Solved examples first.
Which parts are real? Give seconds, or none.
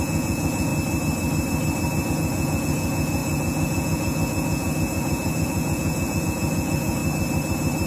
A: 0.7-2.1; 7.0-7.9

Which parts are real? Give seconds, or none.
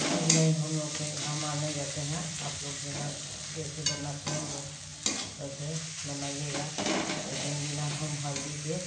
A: 0.0-8.9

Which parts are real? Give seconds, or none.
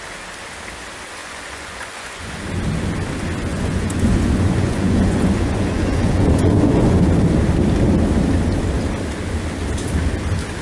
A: 0.0-1.2; 2.4-3.5; 7.1-10.6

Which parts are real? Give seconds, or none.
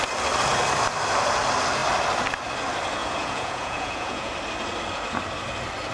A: 0.0-3.0; 4.3-5.9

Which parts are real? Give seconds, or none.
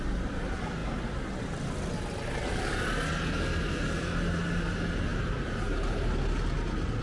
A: 0.0-7.0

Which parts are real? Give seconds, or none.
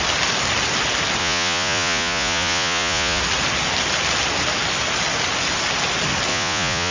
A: 0.0-1.2; 3.2-6.3